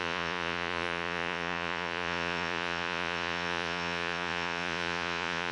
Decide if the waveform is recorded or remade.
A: remade